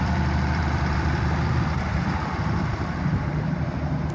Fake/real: fake